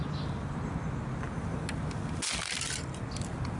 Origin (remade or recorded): recorded